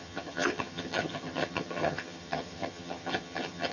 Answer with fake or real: fake